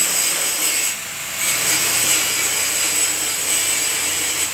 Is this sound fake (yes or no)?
no